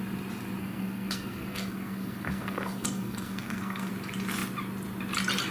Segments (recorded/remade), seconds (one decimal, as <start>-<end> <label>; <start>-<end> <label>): 0.0-0.6 recorded; 0.6-3.9 remade; 3.9-5.5 recorded

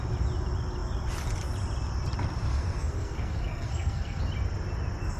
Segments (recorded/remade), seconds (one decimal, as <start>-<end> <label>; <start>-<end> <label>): 0.0-2.5 recorded; 2.5-4.2 remade; 4.2-5.2 recorded